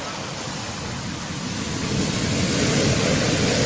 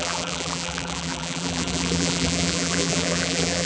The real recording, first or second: first